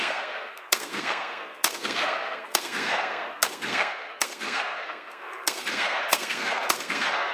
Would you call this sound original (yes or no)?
no